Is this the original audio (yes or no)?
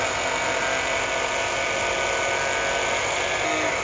yes